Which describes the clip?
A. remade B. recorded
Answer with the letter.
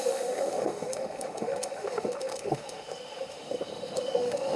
A